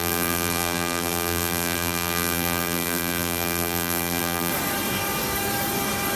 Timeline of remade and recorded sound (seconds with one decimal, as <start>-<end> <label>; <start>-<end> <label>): 0.0-4.5 remade; 4.5-6.2 recorded